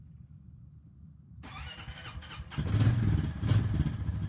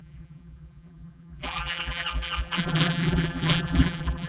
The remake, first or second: second